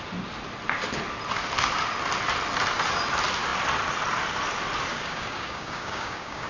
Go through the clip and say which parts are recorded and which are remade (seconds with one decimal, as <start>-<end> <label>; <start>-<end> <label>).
0.0-4.9 recorded; 4.9-6.5 remade